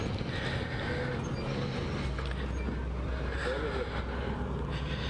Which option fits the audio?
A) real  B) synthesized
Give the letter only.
A